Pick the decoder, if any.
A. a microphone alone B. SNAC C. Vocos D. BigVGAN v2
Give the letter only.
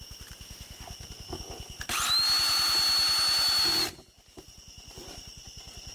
A